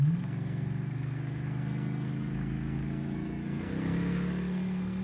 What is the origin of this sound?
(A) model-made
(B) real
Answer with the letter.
A